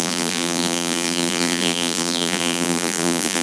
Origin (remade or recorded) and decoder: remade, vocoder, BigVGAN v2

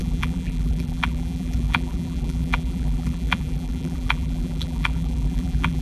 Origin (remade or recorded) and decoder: remade, vocoder, BigVGAN v2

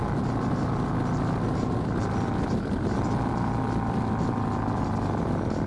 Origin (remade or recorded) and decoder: recorded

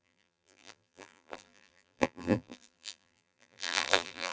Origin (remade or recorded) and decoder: remade, vocoder, BigVGAN v2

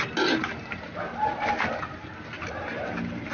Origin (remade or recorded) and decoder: recorded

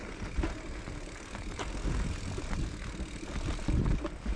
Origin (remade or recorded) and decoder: recorded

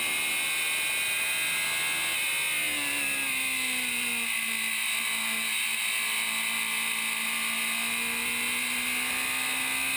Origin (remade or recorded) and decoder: recorded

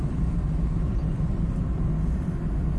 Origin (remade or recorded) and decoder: remade, vocoder, BigVGAN v2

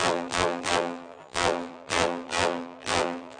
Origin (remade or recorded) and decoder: remade, vocoder, BigVGAN v2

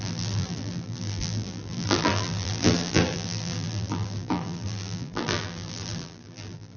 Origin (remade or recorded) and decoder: remade, vocoder, BigVGAN v2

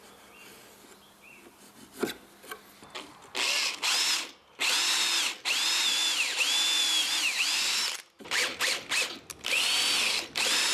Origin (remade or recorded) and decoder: recorded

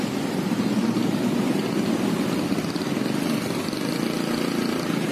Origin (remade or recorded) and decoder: recorded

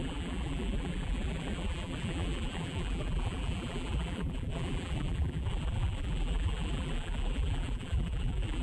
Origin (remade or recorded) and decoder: remade, vocoder, BigVGAN v2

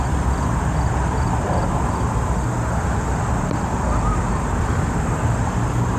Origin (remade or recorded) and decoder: recorded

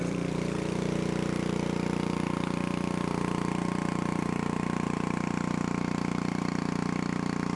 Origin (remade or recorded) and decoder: remade, vocoder, BigVGAN v2